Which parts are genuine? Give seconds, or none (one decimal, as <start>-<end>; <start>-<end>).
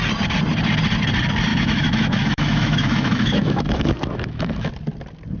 0.0-1.5; 4.7-5.4